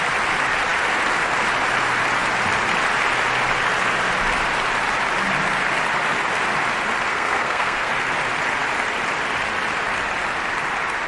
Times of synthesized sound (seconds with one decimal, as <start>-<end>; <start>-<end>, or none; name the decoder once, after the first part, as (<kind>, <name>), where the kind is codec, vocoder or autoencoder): 7.1-7.9 (codec, SNAC)